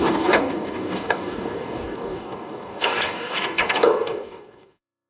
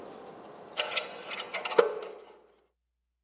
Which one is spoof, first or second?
first